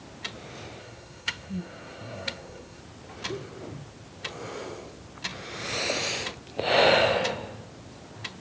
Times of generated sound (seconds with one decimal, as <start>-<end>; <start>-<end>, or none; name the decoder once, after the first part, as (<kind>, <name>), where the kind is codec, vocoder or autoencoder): 0.8-2.8 (codec, SNAC)